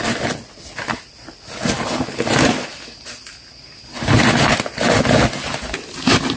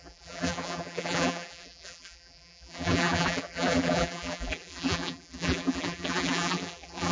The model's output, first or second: second